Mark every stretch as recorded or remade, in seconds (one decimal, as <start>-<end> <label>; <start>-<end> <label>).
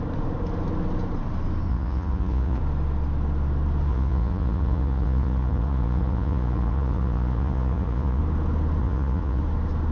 0.0-1.7 recorded; 1.7-2.6 remade; 2.6-3.9 recorded; 3.9-8.2 remade; 8.2-8.8 recorded; 8.8-9.4 remade; 9.4-9.9 recorded